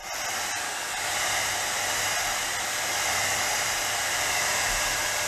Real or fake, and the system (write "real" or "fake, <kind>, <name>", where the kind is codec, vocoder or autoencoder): real